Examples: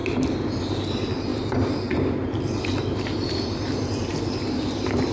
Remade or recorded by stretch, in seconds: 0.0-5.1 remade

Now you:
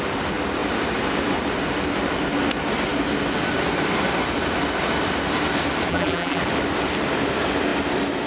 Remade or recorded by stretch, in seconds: 0.0-5.9 recorded; 5.9-6.4 remade; 6.4-8.3 recorded

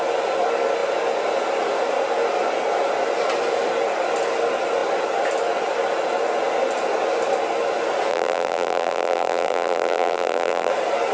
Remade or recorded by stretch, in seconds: 0.0-8.1 recorded; 8.1-10.7 remade; 10.7-11.1 recorded

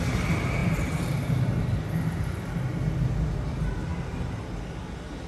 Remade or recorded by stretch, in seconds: 0.0-5.3 recorded

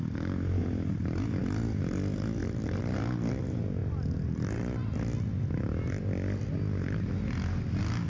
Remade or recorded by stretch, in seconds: 0.0-8.1 recorded

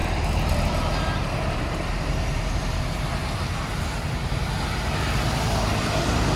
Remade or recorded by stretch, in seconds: 0.0-3.8 remade; 3.8-6.4 recorded